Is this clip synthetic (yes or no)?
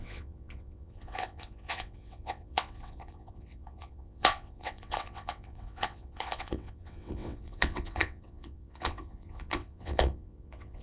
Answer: yes